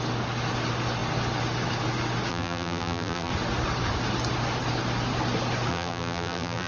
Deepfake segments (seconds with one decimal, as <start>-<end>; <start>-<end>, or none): 2.3-3.3; 5.7-6.7